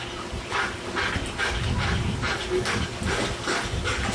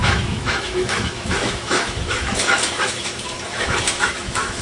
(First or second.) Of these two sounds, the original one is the first